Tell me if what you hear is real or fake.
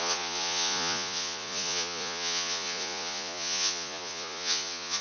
fake